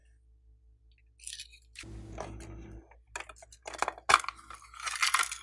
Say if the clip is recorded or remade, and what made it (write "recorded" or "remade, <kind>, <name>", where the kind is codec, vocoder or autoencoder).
recorded